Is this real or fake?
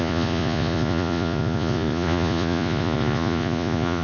fake